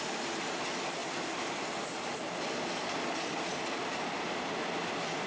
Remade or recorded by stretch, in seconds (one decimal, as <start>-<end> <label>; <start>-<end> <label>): 0.0-5.3 recorded